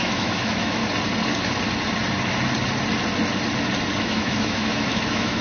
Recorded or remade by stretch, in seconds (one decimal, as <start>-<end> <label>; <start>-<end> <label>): 0.0-0.8 remade; 0.8-4.0 recorded; 4.0-5.4 remade